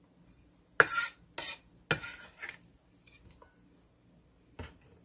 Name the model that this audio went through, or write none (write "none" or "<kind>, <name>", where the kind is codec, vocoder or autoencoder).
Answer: none